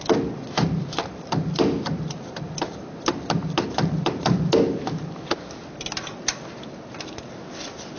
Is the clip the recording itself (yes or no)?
no